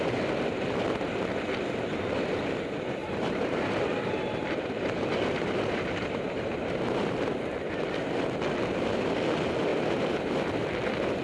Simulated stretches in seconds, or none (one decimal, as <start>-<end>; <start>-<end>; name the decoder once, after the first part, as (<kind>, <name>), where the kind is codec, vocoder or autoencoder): 3.0-6.8 (vocoder, BigVGAN v2); 9.7-10.3